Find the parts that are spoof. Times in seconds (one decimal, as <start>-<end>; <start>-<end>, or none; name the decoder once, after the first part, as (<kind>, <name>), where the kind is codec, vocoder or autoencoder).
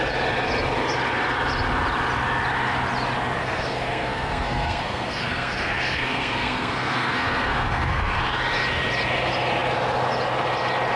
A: 3.4-8.2 (codec, SNAC)